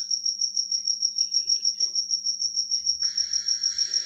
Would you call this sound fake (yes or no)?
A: yes